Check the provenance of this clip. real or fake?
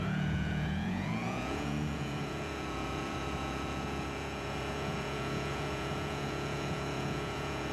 fake